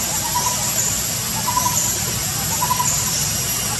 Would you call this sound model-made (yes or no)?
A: no